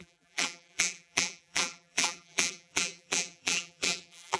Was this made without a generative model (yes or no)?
no